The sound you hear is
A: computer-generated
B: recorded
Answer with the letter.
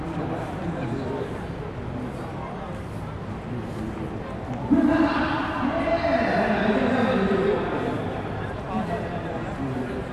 B